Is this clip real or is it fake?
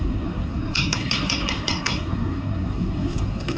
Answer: fake